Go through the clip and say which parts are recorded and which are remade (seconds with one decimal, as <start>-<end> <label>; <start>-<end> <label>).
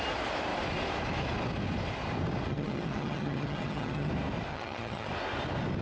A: 0.0-2.5 recorded; 2.5-4.1 remade; 4.1-4.5 recorded; 4.5-5.1 remade; 5.1-5.8 recorded